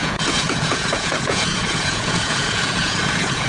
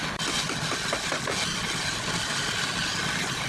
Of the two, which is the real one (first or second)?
second